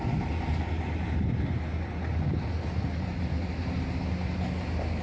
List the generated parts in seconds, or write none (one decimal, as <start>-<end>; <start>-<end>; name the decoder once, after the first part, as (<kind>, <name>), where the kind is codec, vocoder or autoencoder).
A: none